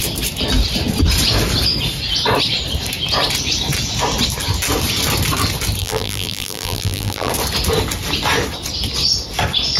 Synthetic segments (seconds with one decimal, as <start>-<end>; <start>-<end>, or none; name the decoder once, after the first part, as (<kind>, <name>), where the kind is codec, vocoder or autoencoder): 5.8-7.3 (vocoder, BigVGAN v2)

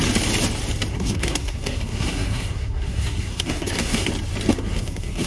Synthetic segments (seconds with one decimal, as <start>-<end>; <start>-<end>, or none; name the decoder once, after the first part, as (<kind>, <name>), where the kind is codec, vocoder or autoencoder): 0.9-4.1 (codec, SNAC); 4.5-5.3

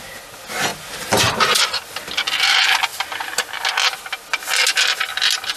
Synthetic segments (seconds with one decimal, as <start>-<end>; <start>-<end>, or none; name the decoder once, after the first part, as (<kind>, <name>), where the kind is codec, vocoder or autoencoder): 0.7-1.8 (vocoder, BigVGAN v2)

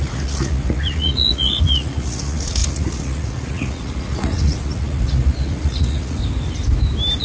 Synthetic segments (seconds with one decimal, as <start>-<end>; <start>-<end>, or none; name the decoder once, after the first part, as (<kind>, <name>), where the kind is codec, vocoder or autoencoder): 0.0-6.2 (vocoder, Vocos)

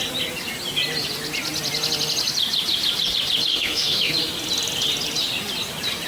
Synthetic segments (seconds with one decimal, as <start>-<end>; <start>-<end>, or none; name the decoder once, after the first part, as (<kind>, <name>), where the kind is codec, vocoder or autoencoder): 3.5-4.1 (autoencoder, DAC-VAE)

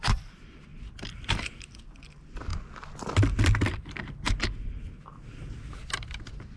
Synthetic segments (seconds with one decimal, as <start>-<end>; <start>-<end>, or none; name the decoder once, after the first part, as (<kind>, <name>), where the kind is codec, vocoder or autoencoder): 0.0-2.5 (vocoder, BigVGAN v2)

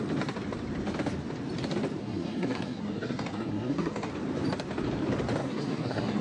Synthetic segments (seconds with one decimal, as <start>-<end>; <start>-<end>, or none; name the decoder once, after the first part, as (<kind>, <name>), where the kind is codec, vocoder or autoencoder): 2.0-4.1 (codec, SNAC); 5.4-6.2